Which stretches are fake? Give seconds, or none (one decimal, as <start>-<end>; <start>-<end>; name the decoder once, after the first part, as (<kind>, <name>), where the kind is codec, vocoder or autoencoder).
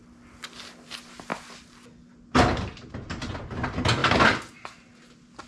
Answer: none